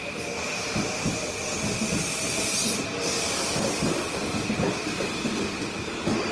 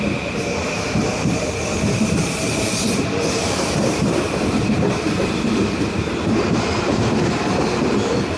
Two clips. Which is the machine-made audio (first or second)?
second